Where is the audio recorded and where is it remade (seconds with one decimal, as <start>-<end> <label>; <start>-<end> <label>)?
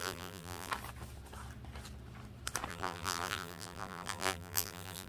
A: 0.0-0.7 remade; 0.7-2.7 recorded; 2.7-5.1 remade